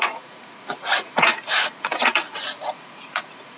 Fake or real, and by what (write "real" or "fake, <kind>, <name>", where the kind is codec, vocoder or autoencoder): fake, vocoder, Vocos